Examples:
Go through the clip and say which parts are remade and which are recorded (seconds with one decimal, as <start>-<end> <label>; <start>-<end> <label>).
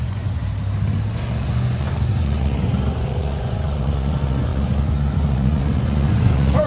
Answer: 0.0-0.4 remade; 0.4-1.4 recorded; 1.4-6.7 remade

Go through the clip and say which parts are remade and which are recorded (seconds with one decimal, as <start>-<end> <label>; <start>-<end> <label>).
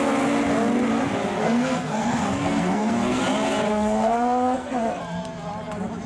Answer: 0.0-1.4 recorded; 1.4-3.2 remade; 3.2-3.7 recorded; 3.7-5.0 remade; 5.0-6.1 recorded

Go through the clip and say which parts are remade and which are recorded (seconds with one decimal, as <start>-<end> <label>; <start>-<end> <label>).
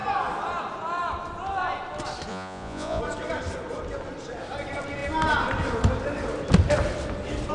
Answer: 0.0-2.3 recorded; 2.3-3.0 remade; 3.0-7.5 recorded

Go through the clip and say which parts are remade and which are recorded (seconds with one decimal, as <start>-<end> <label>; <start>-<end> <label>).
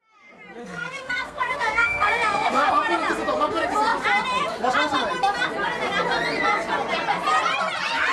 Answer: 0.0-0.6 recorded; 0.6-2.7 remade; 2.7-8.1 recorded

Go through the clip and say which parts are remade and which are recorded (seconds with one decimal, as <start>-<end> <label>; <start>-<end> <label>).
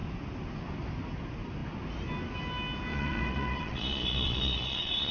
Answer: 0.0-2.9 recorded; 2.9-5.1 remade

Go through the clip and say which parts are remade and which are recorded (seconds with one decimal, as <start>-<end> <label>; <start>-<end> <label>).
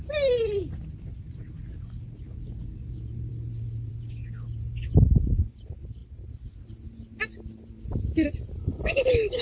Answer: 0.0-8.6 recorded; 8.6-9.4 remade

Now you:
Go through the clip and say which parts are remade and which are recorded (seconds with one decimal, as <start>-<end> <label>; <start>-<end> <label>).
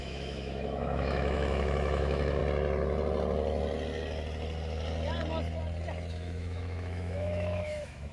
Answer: 0.0-2.4 remade; 2.4-6.1 recorded; 6.1-8.1 remade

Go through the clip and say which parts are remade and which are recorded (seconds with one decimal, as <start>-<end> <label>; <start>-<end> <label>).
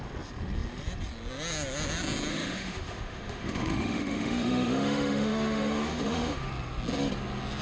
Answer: 0.0-2.3 recorded; 2.3-6.5 remade; 6.5-7.6 recorded